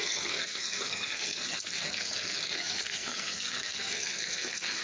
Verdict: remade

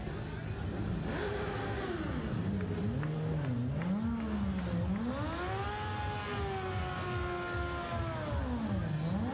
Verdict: recorded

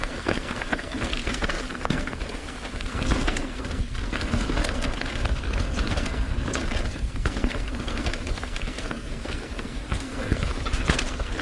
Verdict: remade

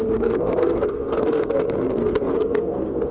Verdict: remade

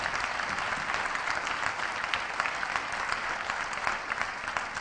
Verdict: recorded